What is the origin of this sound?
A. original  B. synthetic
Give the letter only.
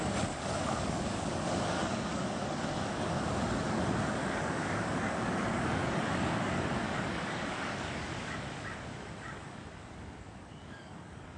B